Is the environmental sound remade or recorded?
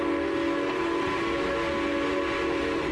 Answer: recorded